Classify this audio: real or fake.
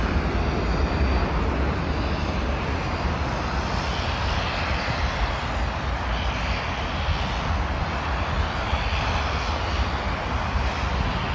real